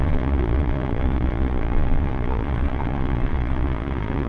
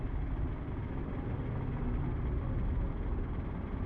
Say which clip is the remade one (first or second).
first